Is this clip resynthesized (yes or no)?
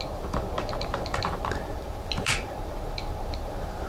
yes